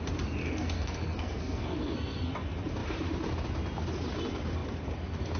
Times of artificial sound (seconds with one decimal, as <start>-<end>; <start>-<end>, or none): 0.4-2.3